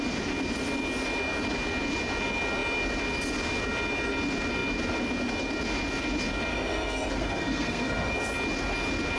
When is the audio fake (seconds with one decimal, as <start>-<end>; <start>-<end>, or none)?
6.5-8.1